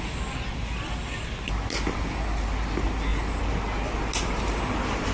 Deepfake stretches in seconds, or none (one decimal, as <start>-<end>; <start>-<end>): none